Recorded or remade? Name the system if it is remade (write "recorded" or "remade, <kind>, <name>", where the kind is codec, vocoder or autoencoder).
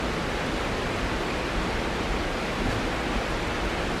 recorded